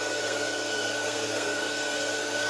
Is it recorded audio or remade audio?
remade